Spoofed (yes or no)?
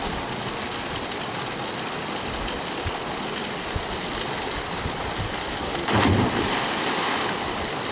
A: no